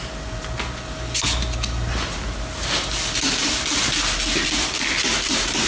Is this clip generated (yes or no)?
no